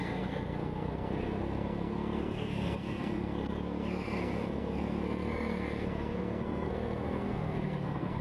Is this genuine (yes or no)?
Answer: no